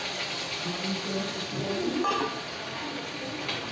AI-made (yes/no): no